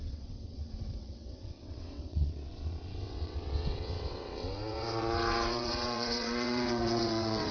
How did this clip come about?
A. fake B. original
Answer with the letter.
A